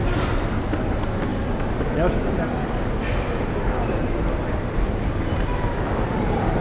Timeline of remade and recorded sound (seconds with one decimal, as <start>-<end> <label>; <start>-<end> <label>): 0.0-6.6 recorded